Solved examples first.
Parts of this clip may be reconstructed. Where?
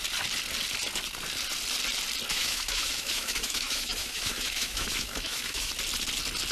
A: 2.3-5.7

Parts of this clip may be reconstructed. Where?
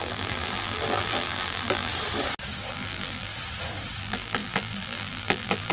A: 0.0-1.9; 2.7-3.3; 4.0-5.7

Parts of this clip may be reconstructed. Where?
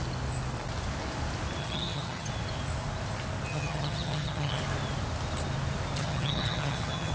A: 1.6-2.3; 3.5-4.6; 6.0-7.1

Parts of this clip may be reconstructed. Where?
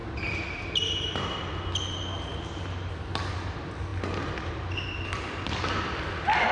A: none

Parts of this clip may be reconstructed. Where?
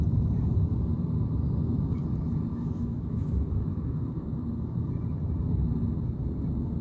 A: 2.5-4.9